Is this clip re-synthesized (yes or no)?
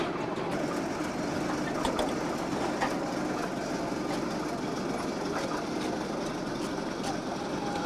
no